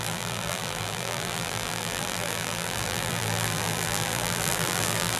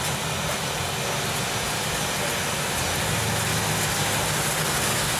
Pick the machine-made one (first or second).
first